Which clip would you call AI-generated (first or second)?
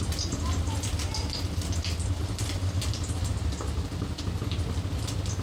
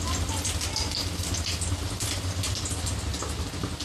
first